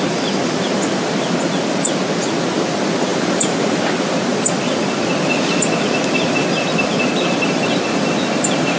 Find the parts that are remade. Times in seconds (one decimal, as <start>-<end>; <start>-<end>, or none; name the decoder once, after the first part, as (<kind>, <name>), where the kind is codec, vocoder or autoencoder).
3.1-3.9 (vocoder, BigVGAN v2)